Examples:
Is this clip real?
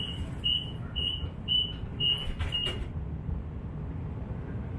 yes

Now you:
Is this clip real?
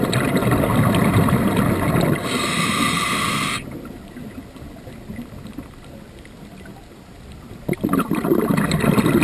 yes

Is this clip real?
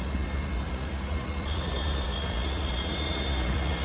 no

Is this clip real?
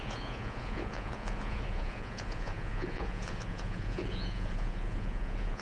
no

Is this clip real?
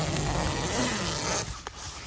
yes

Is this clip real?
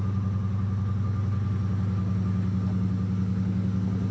yes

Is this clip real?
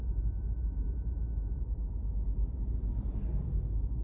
no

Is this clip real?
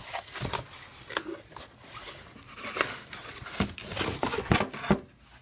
yes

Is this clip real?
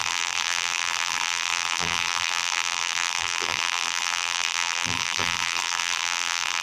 no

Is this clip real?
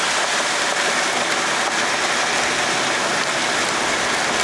yes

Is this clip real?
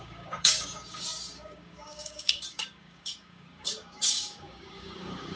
no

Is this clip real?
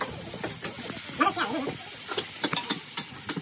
yes